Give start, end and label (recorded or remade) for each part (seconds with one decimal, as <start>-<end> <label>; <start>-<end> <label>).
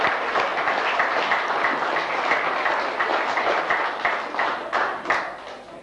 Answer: 0.0-5.8 recorded